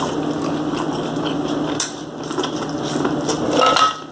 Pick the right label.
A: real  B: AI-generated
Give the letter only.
A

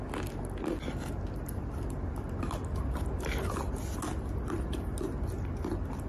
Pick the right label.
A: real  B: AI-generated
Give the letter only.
A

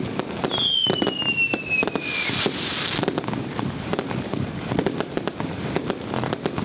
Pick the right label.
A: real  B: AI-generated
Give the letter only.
A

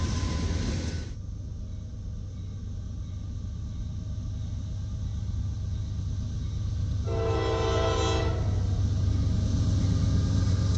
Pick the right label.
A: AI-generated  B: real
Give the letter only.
B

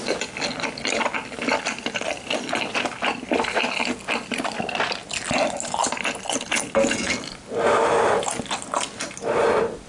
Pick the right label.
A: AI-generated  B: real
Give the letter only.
B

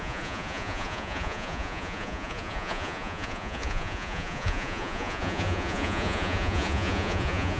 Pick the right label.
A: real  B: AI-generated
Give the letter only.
B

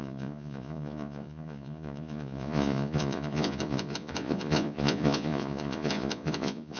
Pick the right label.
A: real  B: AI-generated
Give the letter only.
B